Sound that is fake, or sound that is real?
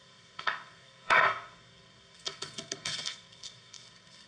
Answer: fake